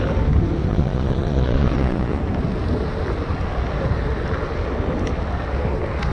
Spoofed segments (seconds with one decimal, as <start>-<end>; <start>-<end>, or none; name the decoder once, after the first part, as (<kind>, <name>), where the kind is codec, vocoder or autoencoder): 0.7-2.2 (vocoder, Vocos)